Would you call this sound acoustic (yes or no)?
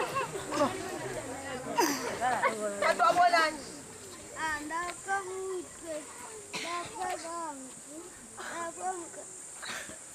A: yes